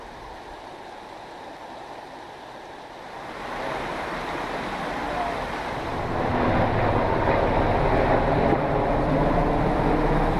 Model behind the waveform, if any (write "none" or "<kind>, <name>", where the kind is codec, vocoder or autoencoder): none